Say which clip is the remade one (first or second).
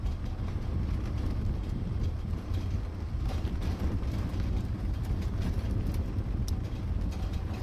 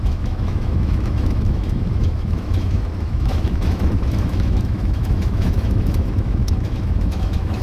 second